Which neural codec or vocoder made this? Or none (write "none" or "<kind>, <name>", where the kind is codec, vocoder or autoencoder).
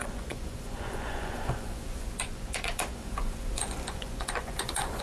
vocoder, Vocos